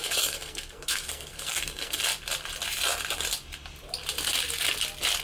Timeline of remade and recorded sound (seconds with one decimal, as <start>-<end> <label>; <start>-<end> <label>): 0.0-2.0 remade; 2.0-5.2 recorded